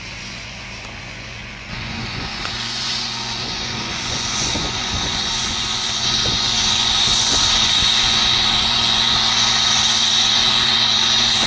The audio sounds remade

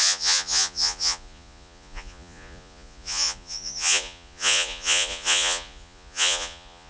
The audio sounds remade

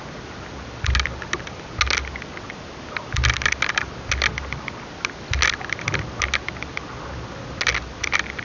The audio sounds recorded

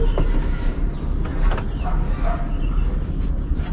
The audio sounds recorded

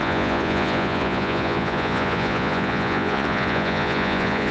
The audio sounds remade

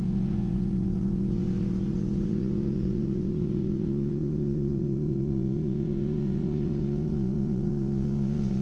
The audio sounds remade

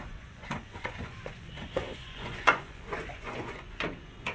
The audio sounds remade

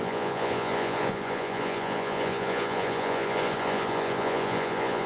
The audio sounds remade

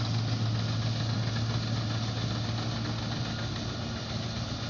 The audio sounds recorded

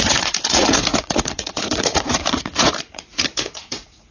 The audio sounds remade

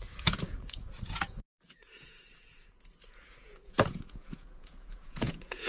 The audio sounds remade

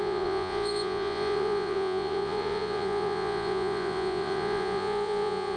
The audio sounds remade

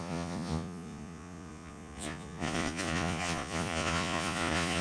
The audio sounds remade